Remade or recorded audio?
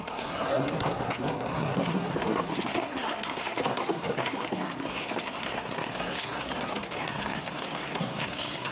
remade